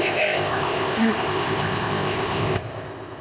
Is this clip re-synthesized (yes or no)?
yes